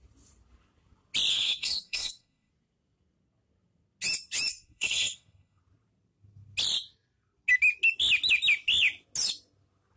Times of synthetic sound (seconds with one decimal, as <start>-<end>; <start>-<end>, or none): 1.3-2.5; 4.5-5.6